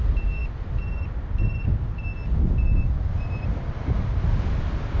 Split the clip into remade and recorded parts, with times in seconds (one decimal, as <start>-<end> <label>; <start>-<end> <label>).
0.0-5.0 recorded